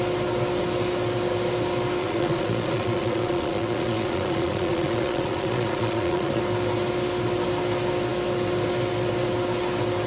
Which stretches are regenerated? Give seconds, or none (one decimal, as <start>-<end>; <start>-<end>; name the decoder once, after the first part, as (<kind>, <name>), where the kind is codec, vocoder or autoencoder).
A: 2.0-6.4 (vocoder, Vocos)